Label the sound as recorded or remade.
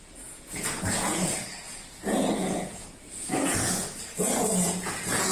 remade